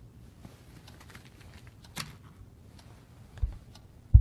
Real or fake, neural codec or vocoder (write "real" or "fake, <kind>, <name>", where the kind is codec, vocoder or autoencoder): real